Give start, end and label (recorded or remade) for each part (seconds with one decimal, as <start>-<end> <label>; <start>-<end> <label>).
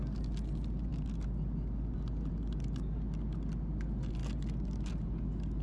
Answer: 0.0-5.6 recorded